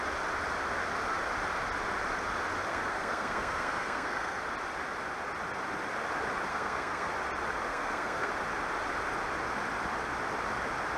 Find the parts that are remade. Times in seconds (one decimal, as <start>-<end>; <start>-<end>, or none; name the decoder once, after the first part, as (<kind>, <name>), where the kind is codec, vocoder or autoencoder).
2.7-4.4 (codec, SNAC); 6.5-7.1; 7.7-8.3